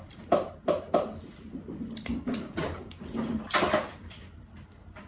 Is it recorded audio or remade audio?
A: remade